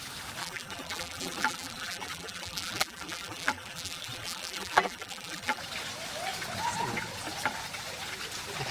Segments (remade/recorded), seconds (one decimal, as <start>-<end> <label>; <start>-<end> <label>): 0.0-0.4 recorded; 0.4-5.6 remade; 5.6-8.7 recorded